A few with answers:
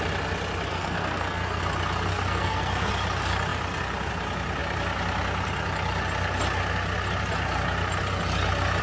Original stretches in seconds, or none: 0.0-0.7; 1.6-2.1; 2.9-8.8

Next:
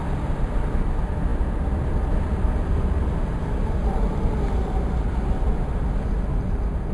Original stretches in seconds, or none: 0.0-6.9

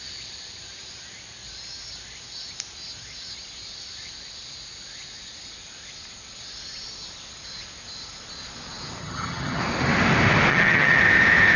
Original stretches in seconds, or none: 0.0-9.0; 9.6-10.5; 11.0-11.6

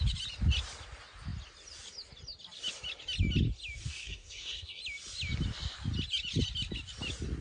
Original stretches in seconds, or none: 0.0-3.8; 4.8-7.4

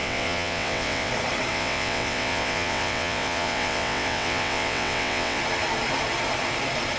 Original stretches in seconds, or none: 1.1-1.5; 5.4-7.0

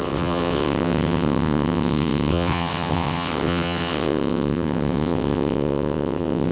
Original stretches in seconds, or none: none

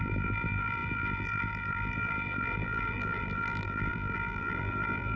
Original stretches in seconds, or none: none

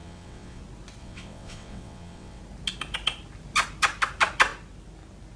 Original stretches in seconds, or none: 0.6-1.0; 2.4-5.4